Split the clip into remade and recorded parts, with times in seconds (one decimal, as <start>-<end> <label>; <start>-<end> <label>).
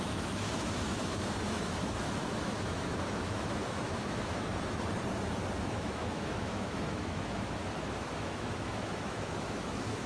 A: 0.0-4.5 remade; 4.5-5.6 recorded; 5.6-10.1 remade